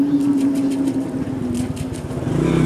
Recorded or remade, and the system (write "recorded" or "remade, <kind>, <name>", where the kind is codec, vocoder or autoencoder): recorded